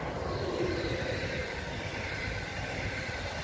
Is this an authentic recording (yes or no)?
yes